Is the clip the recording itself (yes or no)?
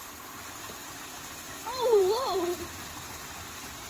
no